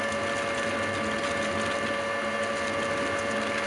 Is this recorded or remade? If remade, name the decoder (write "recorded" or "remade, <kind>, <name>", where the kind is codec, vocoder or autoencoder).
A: recorded